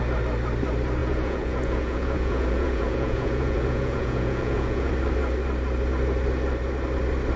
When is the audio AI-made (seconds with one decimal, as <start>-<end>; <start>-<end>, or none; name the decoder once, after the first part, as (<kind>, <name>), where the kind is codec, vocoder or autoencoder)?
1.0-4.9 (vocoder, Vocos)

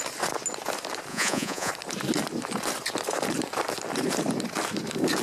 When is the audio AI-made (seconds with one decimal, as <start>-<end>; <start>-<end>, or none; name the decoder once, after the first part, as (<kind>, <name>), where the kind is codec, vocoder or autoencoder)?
1.1-1.7 (vocoder, Vocos)

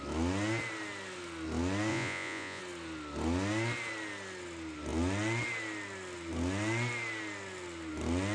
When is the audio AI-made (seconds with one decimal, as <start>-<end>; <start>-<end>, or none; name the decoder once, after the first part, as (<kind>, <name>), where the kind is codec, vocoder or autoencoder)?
1.9-2.6 (vocoder, Vocos)